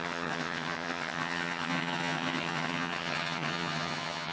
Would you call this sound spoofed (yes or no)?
yes